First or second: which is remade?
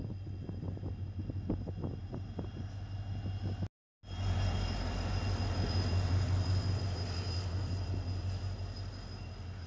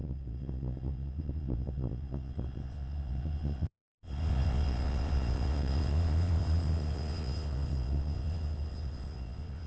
second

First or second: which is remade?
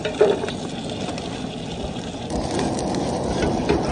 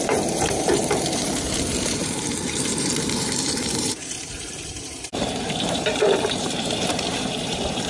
second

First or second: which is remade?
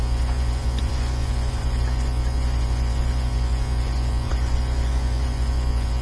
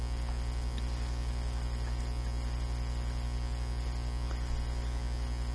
first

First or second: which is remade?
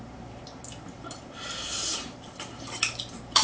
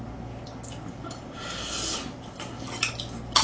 first